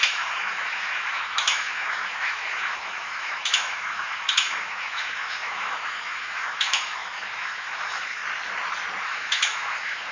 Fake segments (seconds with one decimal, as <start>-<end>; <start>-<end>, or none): 0.0-8.2; 9.0-10.1